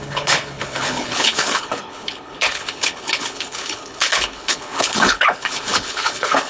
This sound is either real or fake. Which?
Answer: fake